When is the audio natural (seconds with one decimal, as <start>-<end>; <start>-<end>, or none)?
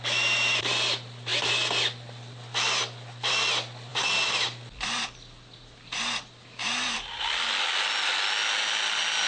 0.0-9.3